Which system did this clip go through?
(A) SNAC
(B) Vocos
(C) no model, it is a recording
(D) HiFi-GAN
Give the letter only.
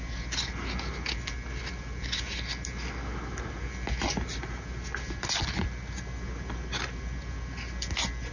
C